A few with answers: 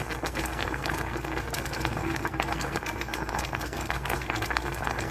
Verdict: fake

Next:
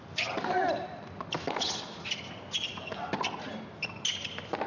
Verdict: real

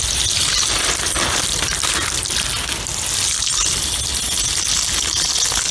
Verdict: real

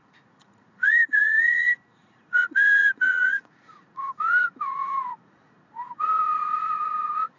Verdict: fake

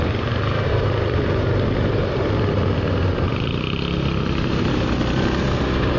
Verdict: real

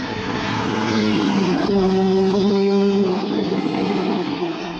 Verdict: fake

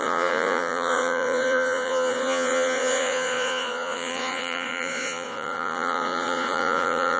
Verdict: fake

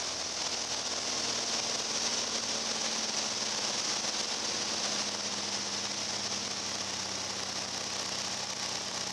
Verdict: real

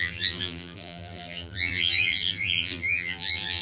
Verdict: fake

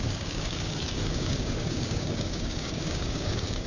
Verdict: fake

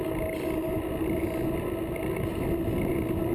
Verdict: real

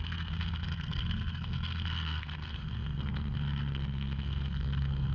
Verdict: fake